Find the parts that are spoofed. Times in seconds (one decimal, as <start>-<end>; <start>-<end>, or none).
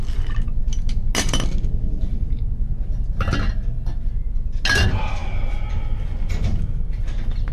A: none